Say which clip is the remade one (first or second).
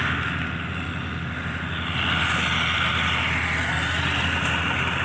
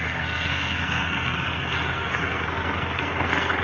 second